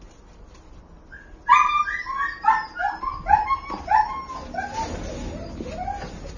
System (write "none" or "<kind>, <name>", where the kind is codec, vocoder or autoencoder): none